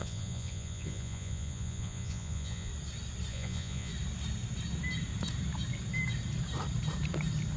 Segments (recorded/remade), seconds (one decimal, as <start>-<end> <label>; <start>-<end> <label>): 0.0-2.7 remade; 2.7-3.3 recorded; 3.3-3.9 remade; 3.9-7.6 recorded